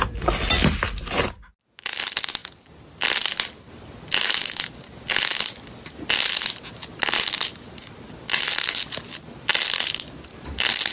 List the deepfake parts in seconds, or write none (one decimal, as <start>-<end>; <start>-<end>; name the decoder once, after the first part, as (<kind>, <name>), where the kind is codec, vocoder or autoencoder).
none